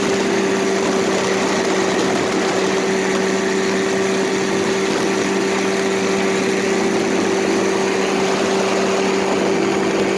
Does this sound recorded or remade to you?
recorded